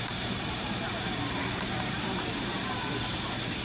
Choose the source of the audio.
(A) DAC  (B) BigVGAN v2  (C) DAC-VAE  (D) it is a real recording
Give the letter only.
B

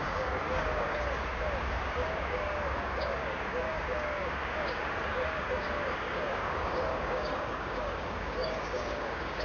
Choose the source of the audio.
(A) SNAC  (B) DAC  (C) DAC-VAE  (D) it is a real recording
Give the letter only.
B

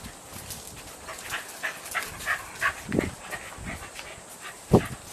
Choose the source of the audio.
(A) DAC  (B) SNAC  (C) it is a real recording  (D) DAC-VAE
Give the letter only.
C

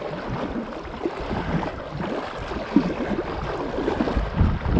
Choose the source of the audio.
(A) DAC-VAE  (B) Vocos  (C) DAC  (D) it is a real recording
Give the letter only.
D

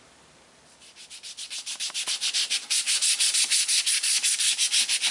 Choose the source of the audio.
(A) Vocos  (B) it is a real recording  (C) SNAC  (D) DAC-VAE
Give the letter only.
B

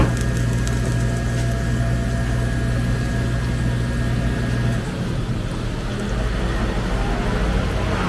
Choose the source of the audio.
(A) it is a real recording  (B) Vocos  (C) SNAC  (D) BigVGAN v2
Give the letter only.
A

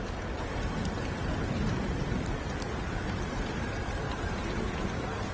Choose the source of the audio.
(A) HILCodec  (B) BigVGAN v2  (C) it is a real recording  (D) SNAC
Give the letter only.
B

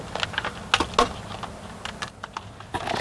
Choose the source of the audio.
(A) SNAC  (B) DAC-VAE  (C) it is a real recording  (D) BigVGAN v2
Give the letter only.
C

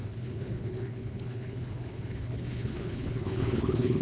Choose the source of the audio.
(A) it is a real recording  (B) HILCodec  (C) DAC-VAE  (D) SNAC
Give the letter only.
B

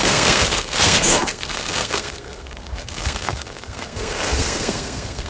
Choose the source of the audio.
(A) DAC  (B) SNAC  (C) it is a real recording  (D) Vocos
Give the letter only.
B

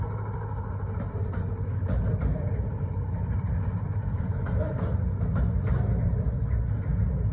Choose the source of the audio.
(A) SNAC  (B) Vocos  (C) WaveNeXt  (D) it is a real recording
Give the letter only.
D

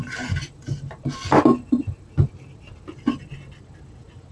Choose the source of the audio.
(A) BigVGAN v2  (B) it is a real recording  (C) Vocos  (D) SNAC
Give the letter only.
B